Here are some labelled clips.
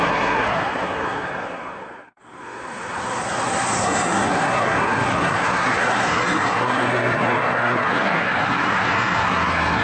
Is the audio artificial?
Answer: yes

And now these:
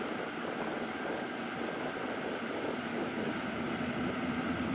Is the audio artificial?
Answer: no